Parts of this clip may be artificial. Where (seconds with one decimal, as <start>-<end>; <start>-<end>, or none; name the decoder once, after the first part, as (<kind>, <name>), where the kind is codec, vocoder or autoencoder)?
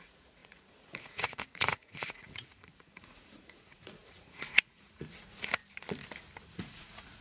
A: 0.0-5.6 (vocoder, Vocos); 6.4-7.2